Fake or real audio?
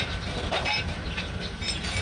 fake